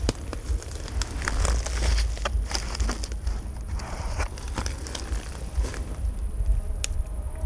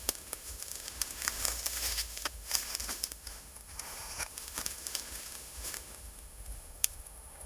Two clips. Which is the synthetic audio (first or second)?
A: second